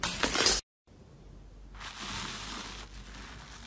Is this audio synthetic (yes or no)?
no